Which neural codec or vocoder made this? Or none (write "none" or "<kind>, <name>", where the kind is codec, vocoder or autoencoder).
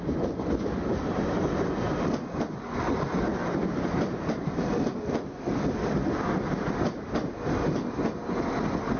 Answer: none